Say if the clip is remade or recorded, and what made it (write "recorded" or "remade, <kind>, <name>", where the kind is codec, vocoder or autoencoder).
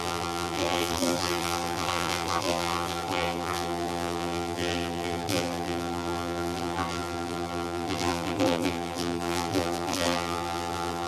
remade, vocoder, BigVGAN v2